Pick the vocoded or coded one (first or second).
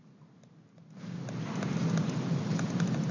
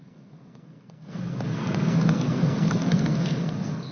second